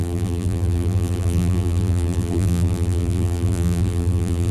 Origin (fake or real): fake